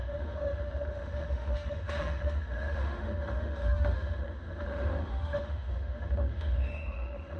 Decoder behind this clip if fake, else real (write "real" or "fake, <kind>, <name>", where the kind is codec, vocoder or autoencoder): fake, autoencoder, DAC-VAE